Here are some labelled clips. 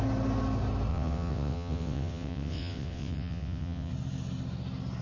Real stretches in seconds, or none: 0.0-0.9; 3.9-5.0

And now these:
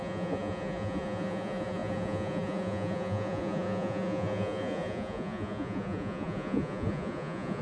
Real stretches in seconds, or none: none

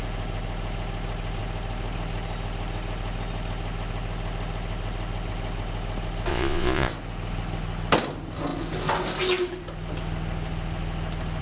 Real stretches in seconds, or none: 0.0-6.3; 6.9-11.4

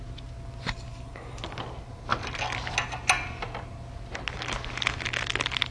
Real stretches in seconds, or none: 0.0-0.9; 1.6-5.7

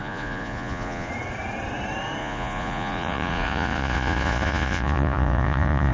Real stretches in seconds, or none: 1.1-2.2